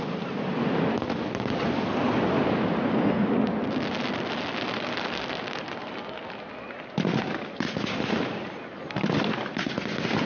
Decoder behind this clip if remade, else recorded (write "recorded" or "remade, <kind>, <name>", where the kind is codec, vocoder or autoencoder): recorded